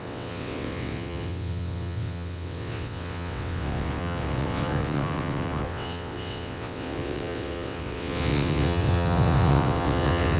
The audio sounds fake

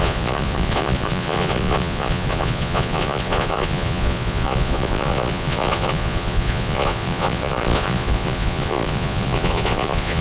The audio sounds fake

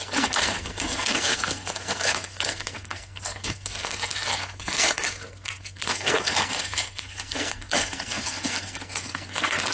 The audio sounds fake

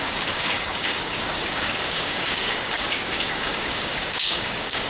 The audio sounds fake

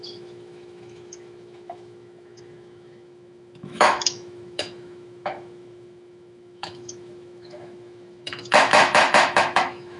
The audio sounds fake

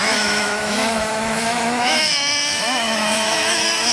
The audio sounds fake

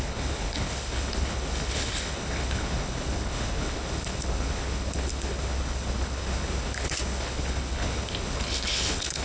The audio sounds fake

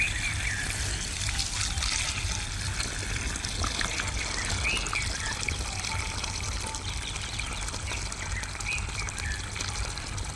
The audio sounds real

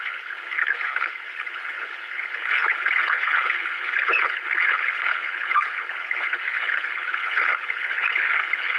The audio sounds fake